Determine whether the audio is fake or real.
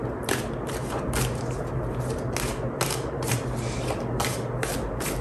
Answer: real